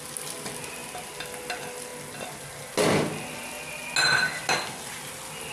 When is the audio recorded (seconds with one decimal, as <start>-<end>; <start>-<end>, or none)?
0.0-5.5

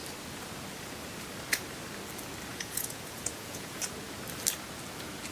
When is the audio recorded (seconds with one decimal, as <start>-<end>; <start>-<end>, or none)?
0.0-2.5; 3.8-5.3